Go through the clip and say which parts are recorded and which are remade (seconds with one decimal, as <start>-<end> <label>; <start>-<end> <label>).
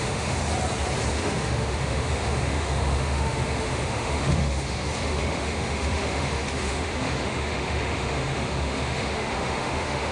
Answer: 0.0-0.4 remade; 0.4-1.1 recorded; 1.1-10.1 remade